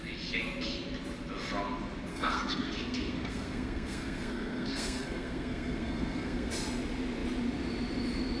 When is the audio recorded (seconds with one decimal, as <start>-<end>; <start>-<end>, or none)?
0.0-2.1; 6.5-8.4